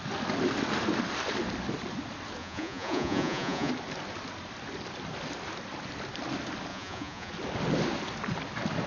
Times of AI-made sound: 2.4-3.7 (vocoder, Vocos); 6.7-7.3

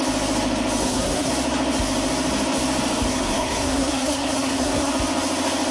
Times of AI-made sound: 0.8-1.3 (codec, SNAC); 3.1-4.9